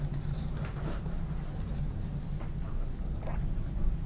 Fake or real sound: real